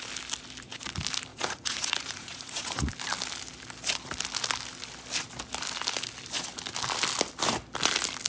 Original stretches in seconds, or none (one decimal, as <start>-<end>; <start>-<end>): 0.0-1.3; 2.9-8.3